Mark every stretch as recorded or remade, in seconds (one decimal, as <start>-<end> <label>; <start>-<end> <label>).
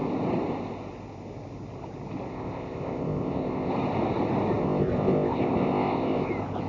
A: 0.0-2.3 recorded; 2.3-3.7 remade; 3.7-4.6 recorded; 4.6-6.3 remade; 6.3-6.7 recorded